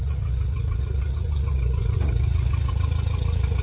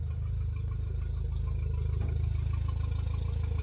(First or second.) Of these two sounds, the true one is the second